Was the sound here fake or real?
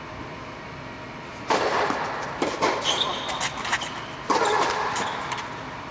real